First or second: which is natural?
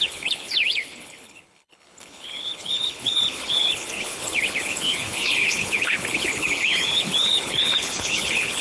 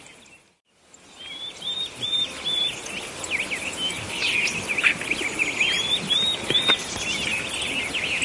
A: second